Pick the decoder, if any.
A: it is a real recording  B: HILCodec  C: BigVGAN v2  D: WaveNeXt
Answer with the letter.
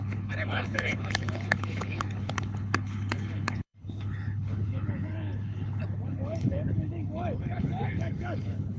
B